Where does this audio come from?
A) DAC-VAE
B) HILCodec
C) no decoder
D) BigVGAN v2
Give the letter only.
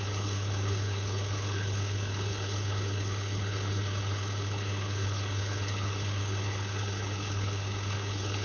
B